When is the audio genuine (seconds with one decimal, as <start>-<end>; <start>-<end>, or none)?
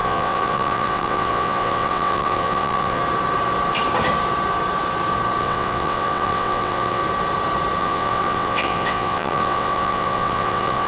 3.0-5.4; 7.0-7.8